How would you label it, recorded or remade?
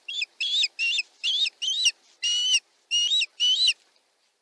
recorded